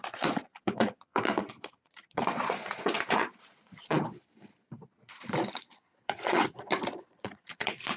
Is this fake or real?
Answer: fake